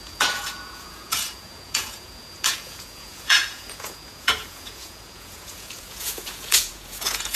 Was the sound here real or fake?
fake